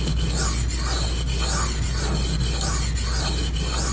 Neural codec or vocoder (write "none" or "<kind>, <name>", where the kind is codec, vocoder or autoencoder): none